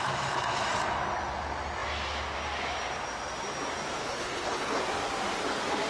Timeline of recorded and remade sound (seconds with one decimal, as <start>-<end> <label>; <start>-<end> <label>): 0.0-4.0 recorded; 4.0-4.8 remade; 4.8-5.9 recorded